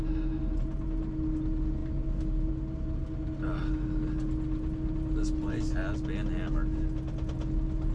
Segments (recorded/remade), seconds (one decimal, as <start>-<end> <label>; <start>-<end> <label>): 0.0-7.9 recorded